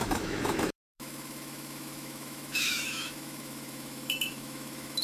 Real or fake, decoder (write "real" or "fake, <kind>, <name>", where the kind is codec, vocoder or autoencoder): fake, autoencoder, DAC-VAE